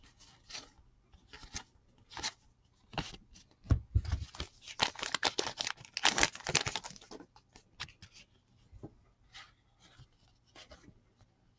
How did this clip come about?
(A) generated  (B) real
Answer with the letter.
B